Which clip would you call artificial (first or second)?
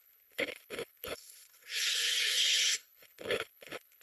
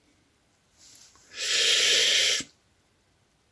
first